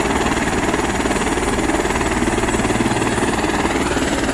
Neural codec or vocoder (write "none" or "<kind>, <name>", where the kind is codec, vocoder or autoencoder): none